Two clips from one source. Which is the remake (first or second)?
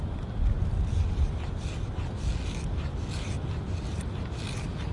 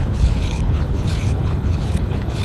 second